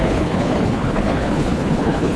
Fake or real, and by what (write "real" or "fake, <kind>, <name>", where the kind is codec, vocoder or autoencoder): fake, codec, HILCodec